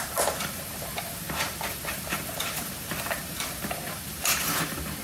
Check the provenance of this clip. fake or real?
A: fake